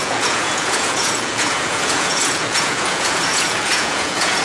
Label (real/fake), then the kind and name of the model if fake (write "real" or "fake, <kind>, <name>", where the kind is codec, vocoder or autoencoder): fake, vocoder, Vocos